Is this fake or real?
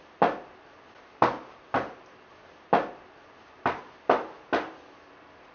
real